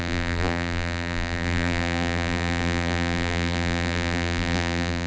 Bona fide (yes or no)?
no